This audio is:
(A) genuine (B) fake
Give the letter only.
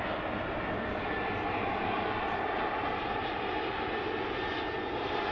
A